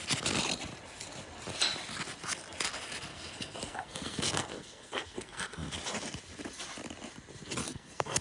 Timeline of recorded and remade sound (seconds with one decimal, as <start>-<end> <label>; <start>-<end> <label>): 0.0-3.1 recorded; 3.1-5.7 remade; 5.7-7.6 recorded; 7.6-8.2 remade